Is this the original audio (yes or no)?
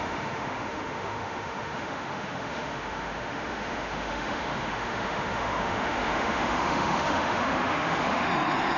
no